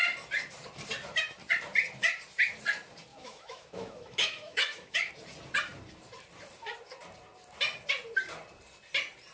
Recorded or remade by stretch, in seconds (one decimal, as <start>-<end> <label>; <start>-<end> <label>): 0.0-3.1 recorded; 3.1-5.1 remade; 5.1-9.3 recorded